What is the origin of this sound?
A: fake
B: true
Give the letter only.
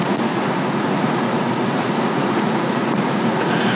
A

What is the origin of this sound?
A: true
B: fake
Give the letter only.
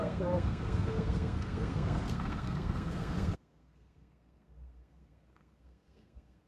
B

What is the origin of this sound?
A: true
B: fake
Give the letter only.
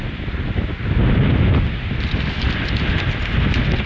A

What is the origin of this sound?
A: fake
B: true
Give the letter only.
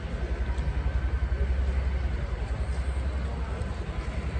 B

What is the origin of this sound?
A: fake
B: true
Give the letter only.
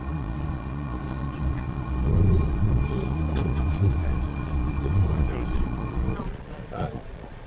A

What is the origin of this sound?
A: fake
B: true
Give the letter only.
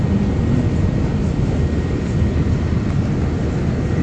B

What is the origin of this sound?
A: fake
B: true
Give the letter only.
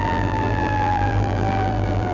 A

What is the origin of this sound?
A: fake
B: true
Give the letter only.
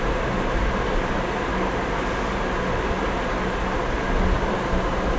B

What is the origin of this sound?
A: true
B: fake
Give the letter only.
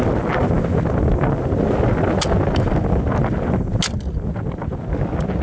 A